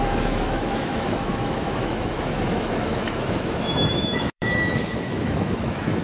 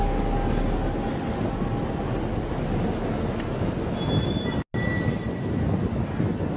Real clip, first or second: second